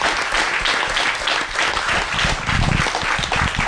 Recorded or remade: recorded